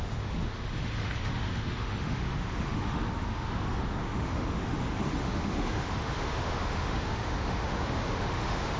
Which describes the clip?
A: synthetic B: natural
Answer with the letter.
A